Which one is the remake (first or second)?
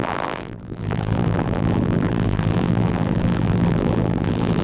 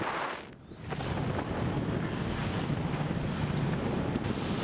first